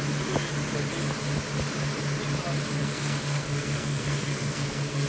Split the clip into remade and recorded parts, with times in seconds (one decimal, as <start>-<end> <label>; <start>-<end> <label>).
0.0-2.8 recorded; 2.8-5.1 remade